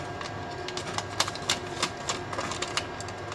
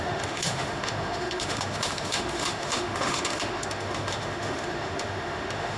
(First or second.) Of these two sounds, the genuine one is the first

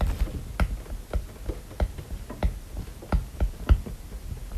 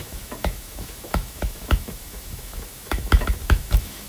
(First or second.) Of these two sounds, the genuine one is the first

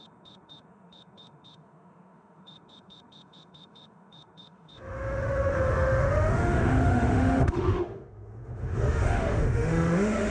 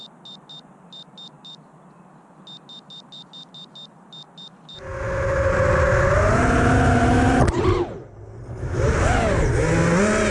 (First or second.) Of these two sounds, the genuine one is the second